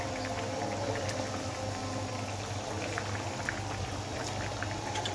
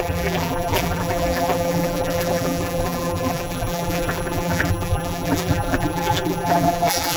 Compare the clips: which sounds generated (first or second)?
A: second